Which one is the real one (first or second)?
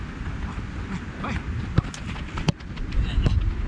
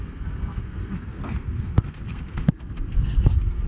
first